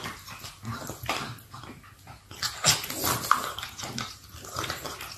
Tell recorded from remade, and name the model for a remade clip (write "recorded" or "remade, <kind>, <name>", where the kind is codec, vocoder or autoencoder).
recorded